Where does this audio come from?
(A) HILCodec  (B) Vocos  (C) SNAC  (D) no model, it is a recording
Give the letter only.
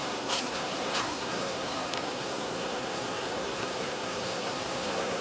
C